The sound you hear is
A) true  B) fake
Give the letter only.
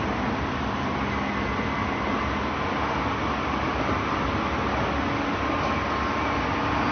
A